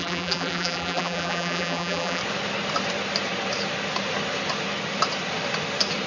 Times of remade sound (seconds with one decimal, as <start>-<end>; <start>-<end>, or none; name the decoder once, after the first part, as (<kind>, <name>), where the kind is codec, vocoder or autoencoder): 0.0-2.2 (vocoder, BigVGAN v2)